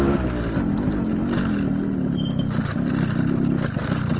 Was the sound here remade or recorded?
recorded